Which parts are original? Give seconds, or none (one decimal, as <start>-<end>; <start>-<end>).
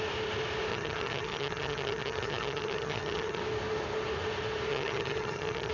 0.0-0.7; 3.4-4.7